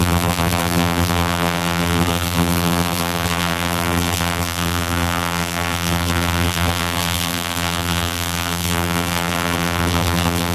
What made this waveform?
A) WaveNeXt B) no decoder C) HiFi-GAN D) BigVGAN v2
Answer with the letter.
D